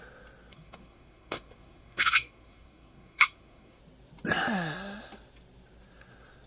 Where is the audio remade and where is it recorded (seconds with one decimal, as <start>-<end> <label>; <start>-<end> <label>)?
0.0-0.5 recorded; 0.5-3.8 remade; 3.8-6.5 recorded